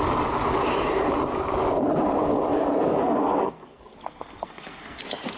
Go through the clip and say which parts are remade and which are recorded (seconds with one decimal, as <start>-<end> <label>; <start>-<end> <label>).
0.0-3.0 recorded; 3.0-5.0 remade; 5.0-5.4 recorded